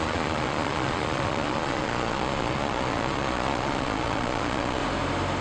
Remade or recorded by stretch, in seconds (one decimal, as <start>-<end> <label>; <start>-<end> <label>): 0.0-4.8 remade; 4.8-5.4 recorded